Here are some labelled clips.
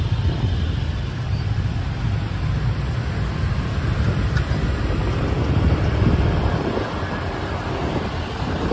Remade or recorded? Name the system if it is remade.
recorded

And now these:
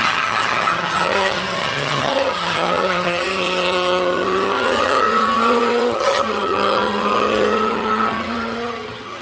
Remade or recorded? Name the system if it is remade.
remade, vocoder, HiFi-GAN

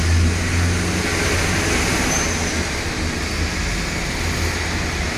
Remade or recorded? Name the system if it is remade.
recorded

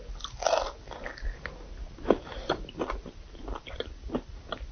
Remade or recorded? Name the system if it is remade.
recorded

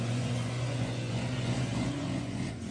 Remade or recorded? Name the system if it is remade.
remade, vocoder, Vocos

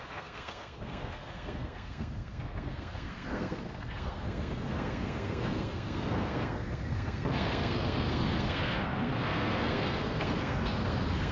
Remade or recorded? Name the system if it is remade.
remade, codec, SNAC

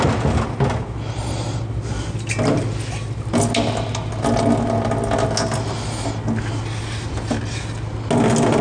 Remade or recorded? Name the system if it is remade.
recorded